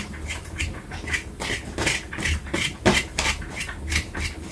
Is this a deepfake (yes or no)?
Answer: no